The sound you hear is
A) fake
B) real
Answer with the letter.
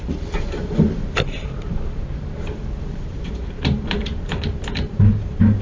A